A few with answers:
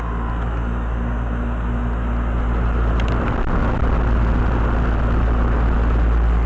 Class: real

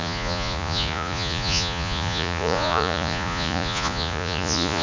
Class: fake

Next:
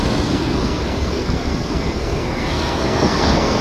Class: fake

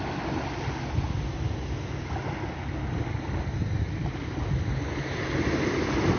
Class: real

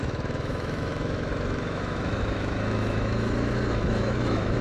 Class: fake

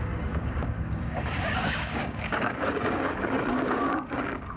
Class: fake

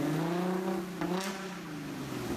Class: real